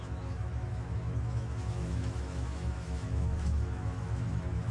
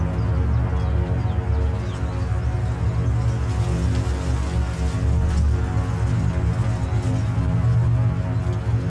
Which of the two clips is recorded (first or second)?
second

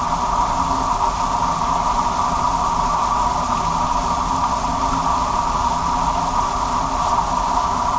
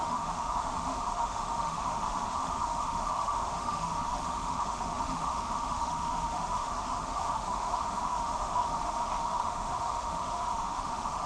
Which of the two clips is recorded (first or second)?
first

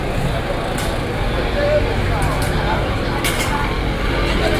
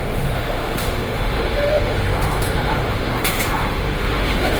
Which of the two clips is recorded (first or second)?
first